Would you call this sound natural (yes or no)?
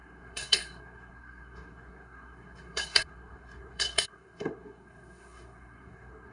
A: no